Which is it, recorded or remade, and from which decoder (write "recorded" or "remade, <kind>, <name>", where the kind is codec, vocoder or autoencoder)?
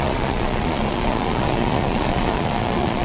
remade, vocoder, Vocos